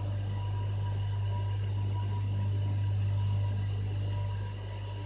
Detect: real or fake real